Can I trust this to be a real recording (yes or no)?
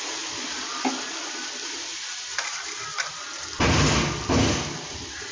no